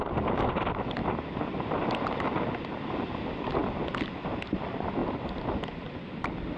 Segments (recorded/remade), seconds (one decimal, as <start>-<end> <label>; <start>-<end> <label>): 0.0-6.6 recorded